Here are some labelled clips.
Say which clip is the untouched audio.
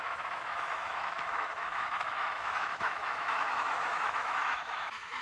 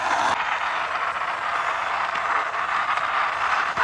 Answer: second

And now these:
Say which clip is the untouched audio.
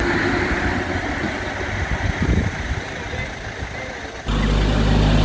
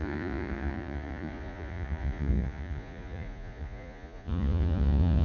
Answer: first